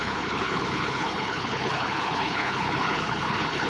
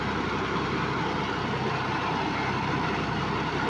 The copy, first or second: first